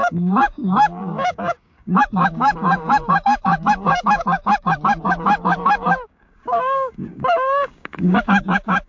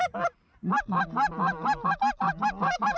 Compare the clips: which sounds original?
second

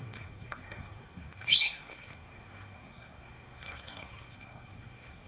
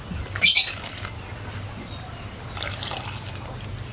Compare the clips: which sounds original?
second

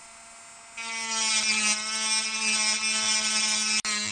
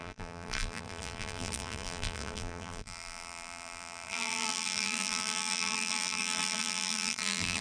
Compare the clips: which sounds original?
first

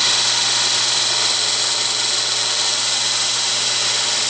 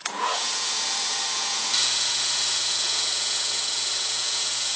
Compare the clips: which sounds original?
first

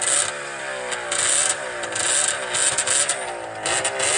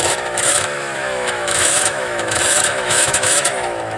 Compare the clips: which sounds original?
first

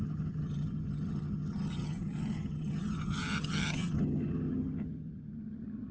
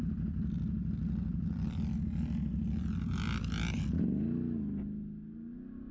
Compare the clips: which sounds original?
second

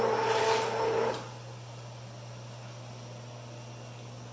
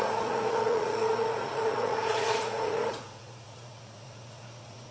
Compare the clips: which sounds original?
first